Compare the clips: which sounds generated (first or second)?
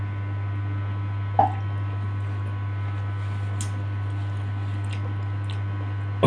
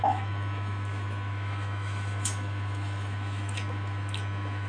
second